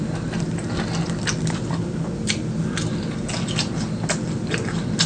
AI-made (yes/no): no